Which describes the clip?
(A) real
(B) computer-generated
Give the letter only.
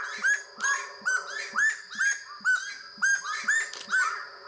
A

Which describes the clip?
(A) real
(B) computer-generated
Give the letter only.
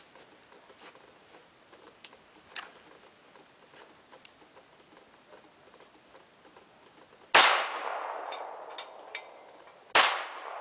A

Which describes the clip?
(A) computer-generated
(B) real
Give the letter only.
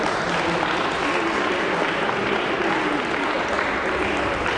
B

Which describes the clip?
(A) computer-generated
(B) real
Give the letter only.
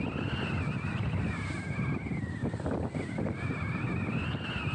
B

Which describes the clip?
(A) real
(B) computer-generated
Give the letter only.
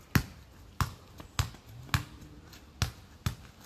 A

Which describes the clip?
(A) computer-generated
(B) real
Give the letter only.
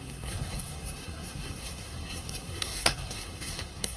A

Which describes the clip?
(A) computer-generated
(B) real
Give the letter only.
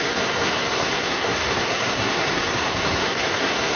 A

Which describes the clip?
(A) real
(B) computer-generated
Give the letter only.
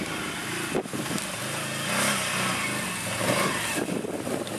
A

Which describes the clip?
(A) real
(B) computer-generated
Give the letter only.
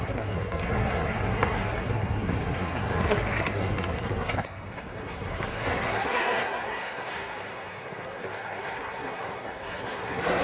B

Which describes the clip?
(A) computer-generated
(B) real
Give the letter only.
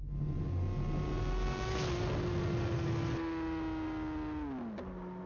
B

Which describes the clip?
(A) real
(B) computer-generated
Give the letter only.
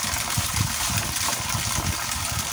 A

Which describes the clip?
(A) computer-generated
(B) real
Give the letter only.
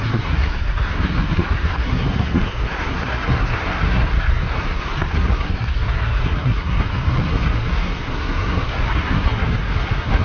A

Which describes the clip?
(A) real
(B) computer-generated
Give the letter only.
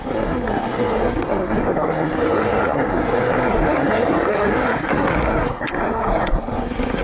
B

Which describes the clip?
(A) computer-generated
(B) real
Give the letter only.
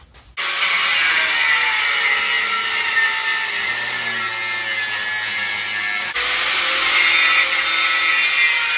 B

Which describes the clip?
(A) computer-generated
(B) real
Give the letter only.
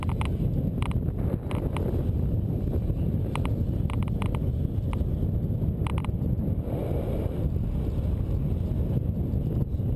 B